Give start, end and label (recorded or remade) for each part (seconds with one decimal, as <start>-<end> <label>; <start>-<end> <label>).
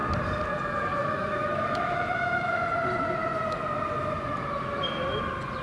0.0-1.0 recorded; 1.0-2.6 remade; 2.6-5.6 recorded